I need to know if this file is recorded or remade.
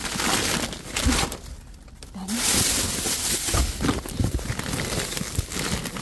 recorded